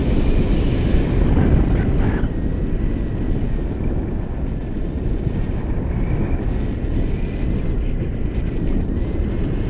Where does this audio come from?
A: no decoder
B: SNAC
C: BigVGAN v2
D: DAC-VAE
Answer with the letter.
A